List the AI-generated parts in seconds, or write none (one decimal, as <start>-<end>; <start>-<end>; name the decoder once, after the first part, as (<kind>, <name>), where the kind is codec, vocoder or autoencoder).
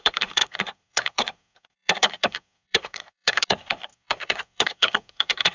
0.0-5.5 (codec, SNAC)